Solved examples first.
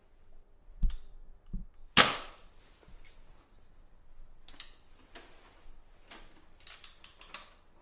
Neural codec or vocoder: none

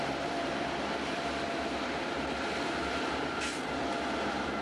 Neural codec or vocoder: vocoder, BigVGAN v2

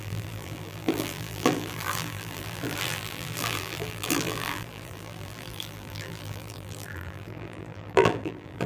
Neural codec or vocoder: vocoder, BigVGAN v2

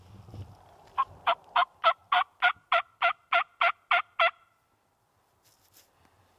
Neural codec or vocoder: none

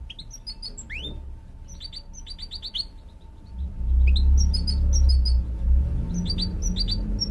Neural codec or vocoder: none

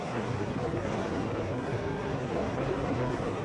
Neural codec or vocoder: codec, SNAC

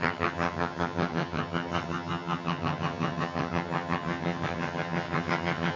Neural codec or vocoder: vocoder, HiFi-GAN